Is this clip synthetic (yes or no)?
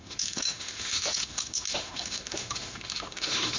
yes